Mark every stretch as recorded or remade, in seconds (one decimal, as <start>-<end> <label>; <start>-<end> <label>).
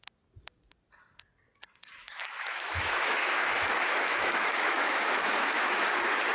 0.0-2.0 recorded; 2.0-5.8 remade; 5.8-6.3 recorded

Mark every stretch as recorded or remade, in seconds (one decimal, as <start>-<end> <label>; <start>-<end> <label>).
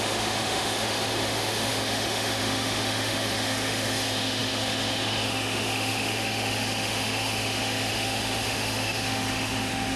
0.0-10.0 remade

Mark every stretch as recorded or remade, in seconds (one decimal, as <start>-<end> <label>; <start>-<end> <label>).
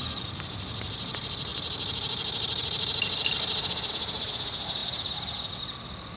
0.0-6.2 recorded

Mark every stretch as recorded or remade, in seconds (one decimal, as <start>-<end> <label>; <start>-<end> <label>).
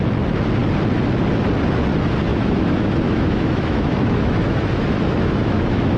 0.0-2.3 recorded; 2.3-6.0 remade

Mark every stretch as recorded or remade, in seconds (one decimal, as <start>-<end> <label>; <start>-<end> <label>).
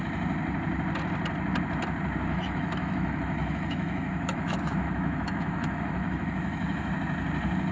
0.0-2.3 recorded; 2.3-6.9 remade; 6.9-7.7 recorded